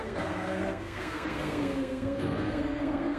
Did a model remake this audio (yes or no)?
yes